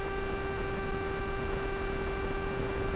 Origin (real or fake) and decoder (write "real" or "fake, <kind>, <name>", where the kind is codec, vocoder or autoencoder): real